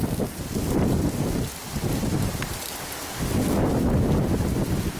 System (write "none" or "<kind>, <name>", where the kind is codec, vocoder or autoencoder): none